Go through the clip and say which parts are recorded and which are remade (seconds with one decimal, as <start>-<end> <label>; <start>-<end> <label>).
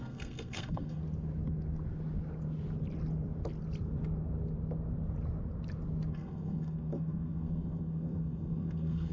0.0-1.0 remade; 1.0-6.1 recorded; 6.1-9.1 remade